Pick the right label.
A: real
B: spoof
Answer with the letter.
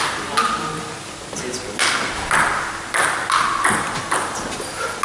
A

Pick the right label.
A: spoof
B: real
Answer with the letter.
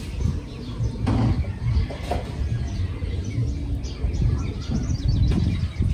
B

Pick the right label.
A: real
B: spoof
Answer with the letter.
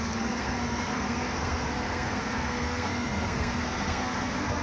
B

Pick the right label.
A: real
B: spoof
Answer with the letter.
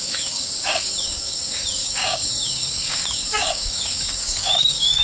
B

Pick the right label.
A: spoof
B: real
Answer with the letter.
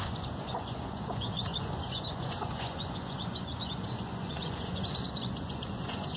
A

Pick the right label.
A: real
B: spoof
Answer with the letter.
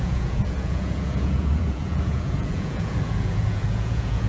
B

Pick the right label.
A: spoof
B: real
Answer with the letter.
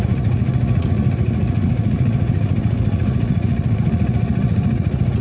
A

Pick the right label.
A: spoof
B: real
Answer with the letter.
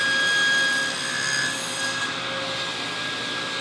B